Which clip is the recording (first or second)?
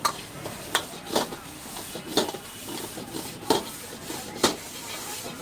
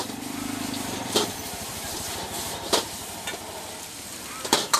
first